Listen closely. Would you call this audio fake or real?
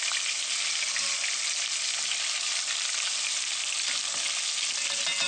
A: real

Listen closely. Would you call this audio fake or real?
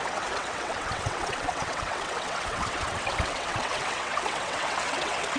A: fake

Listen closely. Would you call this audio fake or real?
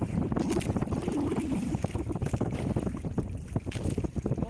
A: real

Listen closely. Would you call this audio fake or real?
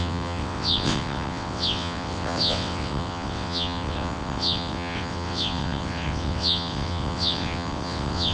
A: fake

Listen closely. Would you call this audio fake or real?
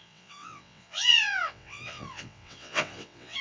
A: fake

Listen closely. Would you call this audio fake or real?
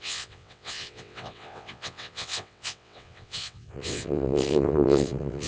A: fake